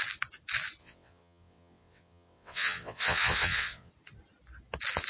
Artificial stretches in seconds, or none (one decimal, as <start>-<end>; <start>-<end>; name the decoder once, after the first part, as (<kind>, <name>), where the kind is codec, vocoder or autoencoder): 0.8-3.9 (vocoder, WaveNeXt)